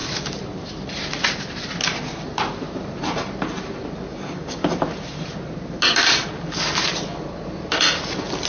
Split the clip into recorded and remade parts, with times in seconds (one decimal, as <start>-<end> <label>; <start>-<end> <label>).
0.0-4.1 recorded; 4.1-4.7 remade; 4.7-8.5 recorded